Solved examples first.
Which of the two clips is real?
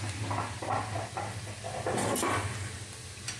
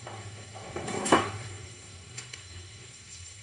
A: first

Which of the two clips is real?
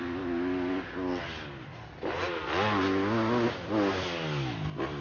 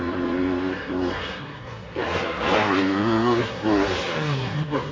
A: first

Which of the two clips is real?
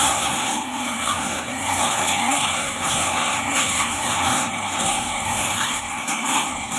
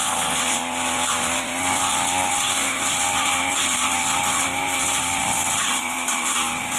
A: second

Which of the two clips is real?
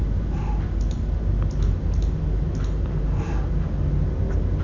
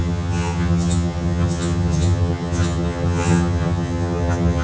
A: first